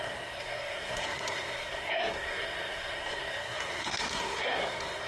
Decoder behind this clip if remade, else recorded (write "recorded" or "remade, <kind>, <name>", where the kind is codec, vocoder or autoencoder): remade, codec, SNAC